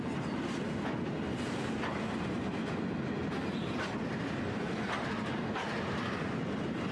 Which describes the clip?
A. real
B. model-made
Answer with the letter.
A